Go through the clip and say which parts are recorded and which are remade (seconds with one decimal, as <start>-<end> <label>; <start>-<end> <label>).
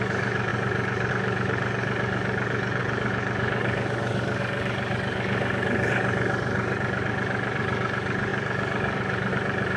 0.0-9.8 remade